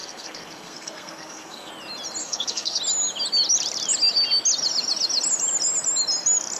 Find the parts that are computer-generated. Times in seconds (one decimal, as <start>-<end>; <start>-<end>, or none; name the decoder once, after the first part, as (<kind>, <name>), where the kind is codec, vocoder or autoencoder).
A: 0.0-1.7 (codec, SNAC); 2.2-2.8